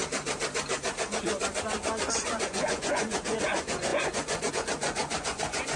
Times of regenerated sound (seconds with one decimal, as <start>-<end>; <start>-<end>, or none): 2.2-5.8